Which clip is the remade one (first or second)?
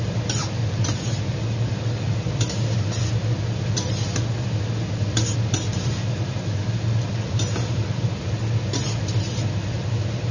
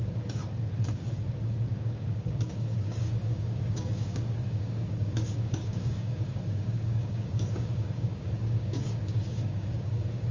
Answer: second